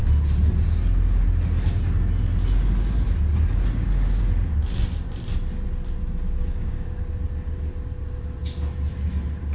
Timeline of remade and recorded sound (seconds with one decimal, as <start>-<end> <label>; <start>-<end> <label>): 0.0-6.4 recorded; 6.4-7.0 remade; 7.0-9.5 recorded